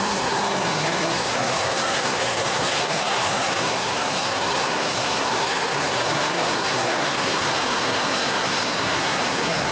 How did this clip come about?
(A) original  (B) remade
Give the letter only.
B